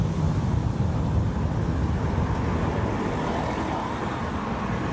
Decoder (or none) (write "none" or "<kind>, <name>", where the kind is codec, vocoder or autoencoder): none